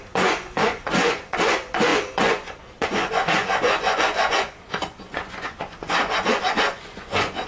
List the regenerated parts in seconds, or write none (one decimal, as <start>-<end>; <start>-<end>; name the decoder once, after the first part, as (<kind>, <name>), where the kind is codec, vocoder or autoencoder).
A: 0.0-7.5 (vocoder, Vocos)